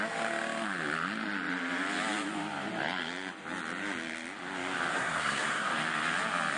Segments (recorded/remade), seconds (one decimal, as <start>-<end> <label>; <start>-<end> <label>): 0.0-4.9 recorded; 4.9-5.7 remade; 5.7-6.6 recorded